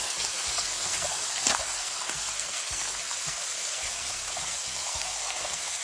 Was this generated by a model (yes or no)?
yes